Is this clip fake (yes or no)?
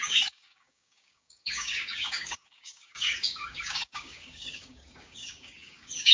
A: yes